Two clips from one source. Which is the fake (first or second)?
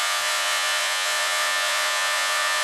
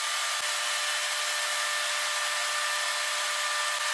first